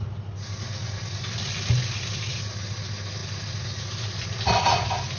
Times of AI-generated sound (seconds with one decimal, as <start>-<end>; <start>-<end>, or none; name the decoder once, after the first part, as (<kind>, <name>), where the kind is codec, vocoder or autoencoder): none